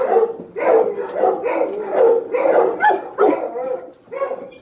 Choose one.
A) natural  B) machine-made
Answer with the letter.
A